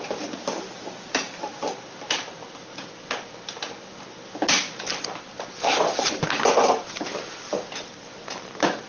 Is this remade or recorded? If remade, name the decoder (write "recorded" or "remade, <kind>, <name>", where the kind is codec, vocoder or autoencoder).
recorded